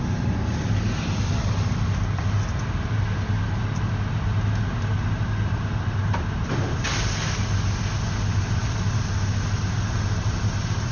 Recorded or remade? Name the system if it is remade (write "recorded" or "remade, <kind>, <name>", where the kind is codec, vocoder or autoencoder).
recorded